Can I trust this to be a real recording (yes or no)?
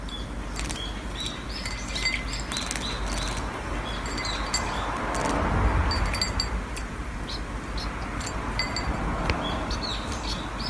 yes